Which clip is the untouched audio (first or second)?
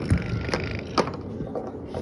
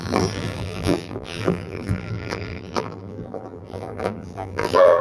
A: first